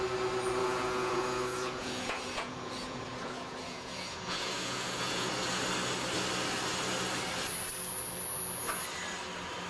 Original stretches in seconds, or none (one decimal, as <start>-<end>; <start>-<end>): 0.0-0.6; 5.3-9.7